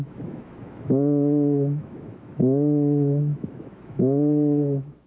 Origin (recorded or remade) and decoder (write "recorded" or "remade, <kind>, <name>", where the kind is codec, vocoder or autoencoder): remade, autoencoder, DAC-VAE